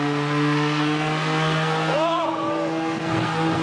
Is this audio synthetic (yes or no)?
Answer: yes